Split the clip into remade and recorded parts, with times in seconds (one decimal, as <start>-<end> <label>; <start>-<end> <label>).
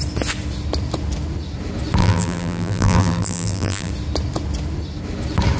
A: 0.0-2.0 recorded; 2.0-3.9 remade; 3.9-5.6 recorded